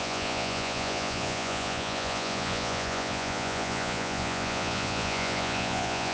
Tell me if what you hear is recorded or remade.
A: remade